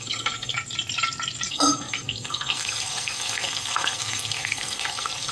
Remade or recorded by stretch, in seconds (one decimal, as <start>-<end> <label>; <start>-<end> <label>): 0.0-0.5 remade; 0.5-1.5 recorded; 1.5-5.3 remade

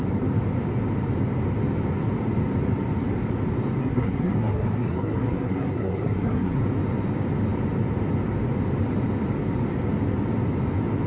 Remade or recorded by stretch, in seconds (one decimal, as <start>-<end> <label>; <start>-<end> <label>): 0.0-3.8 recorded; 3.8-6.6 remade; 6.6-11.1 recorded